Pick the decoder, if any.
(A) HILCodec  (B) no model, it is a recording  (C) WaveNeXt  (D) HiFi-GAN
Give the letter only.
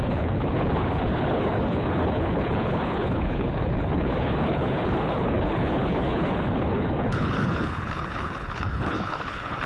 A